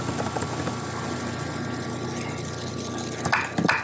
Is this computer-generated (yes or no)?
no